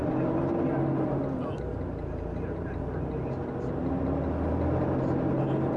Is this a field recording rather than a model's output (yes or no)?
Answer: yes